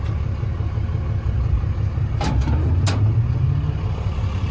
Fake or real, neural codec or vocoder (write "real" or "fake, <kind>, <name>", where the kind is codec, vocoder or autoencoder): real